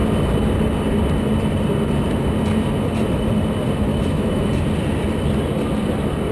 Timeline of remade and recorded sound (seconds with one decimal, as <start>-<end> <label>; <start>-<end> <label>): 0.0-3.9 recorded; 3.9-4.5 remade; 4.5-6.3 recorded